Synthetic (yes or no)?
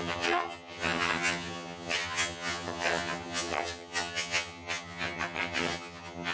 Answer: yes